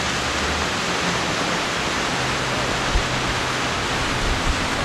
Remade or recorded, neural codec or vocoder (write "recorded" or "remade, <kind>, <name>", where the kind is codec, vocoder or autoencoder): recorded